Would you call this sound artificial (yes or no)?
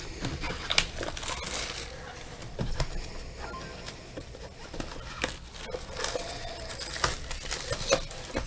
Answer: no